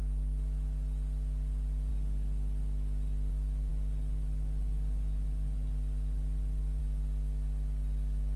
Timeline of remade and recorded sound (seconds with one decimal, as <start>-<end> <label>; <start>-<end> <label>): 0.0-8.4 recorded